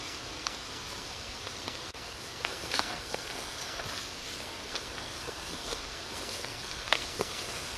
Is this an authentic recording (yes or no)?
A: no